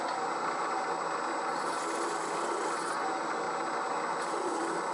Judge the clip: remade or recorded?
recorded